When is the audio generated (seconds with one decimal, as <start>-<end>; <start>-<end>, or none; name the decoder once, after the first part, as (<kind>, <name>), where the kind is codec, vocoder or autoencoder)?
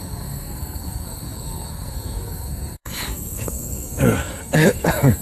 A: 0.0-5.2 (codec, SNAC)